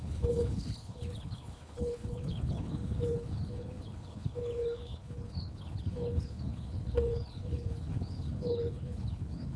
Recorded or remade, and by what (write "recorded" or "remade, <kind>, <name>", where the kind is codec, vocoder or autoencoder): remade, codec, HILCodec